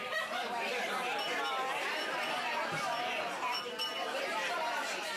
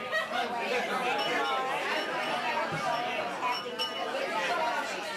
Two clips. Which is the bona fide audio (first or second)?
second